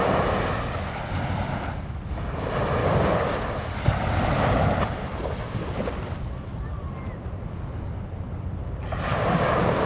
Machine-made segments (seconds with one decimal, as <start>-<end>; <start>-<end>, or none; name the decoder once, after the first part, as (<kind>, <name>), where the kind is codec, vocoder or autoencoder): 2.8-3.5 (codec, DAC); 9.1-9.9